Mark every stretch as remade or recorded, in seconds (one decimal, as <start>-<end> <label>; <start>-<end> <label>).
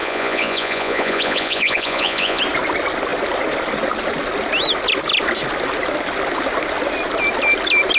0.0-2.4 remade; 2.4-8.0 recorded